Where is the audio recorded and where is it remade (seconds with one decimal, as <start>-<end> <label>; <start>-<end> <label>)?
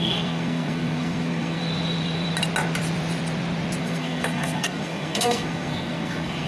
0.0-1.6 remade; 1.6-3.8 recorded; 3.8-6.5 remade